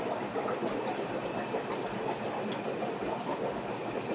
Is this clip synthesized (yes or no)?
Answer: no